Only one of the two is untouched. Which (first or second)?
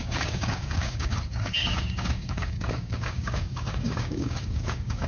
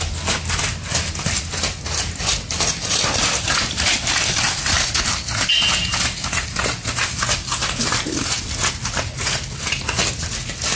second